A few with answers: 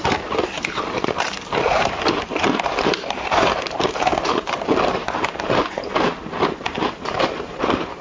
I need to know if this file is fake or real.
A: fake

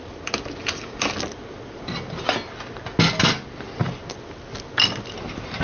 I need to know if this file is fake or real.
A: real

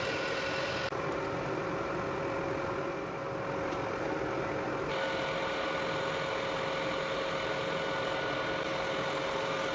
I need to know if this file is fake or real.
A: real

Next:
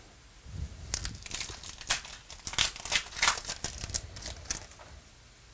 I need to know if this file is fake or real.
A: real